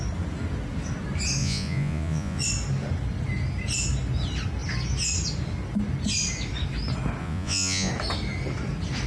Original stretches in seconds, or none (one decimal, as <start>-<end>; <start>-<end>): 0.0-1.4; 2.4-7.2; 7.9-9.1